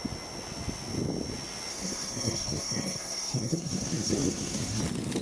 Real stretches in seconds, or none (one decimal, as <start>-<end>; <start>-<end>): 0.0-1.7; 4.8-5.2